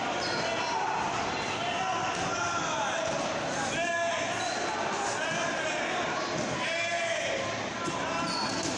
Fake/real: real